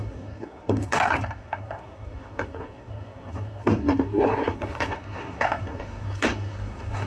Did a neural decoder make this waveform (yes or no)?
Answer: yes